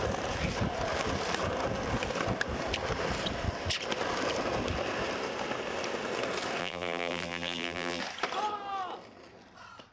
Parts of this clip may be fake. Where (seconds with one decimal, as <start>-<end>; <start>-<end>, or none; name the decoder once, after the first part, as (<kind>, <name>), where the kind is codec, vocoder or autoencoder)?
6.6-8.0 (vocoder, BigVGAN v2)